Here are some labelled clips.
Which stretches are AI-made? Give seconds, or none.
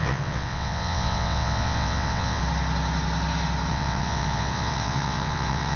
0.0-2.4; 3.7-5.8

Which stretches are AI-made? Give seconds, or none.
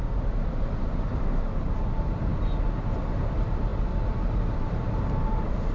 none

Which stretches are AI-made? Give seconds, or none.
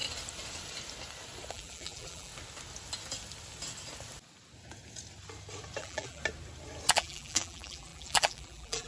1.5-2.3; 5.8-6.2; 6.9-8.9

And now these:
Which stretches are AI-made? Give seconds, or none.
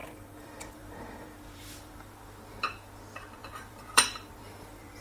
0.0-3.0; 3.4-5.0